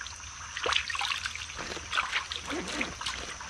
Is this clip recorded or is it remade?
recorded